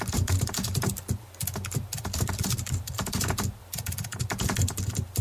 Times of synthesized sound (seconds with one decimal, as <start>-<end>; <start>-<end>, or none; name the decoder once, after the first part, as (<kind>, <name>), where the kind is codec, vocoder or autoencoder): 0.0-4.1 (vocoder, BigVGAN v2); 4.8-5.2